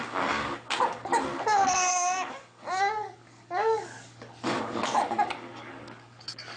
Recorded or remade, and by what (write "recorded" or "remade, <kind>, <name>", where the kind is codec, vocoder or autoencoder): remade, codec, DAC